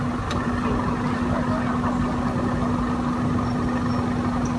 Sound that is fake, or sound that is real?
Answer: real